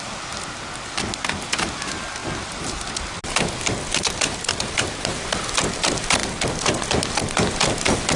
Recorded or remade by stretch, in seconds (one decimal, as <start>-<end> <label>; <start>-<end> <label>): 0.0-8.2 recorded